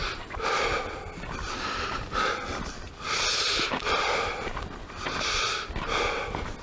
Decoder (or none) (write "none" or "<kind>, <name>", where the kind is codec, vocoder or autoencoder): none